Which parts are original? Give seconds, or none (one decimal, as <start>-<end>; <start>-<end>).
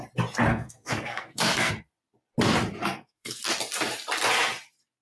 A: 0.0-0.5; 1.7-2.8; 3.4-5.0